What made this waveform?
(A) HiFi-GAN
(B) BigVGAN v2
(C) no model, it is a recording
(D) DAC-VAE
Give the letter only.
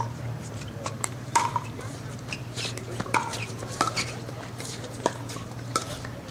B